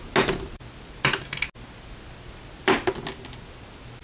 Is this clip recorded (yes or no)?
yes